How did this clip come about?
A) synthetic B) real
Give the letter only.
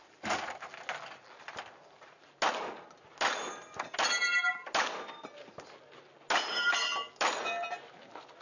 B